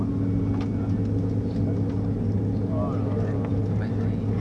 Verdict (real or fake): real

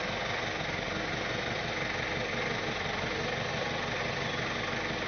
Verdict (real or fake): real